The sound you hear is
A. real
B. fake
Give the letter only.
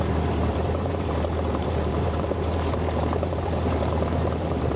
B